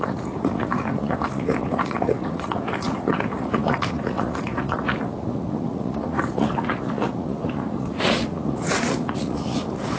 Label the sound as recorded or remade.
remade